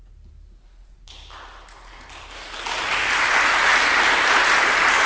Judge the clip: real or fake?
real